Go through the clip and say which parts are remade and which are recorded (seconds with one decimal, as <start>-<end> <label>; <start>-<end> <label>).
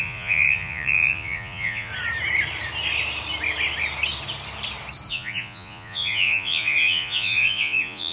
0.0-1.9 remade; 1.9-5.1 recorded; 5.1-8.1 remade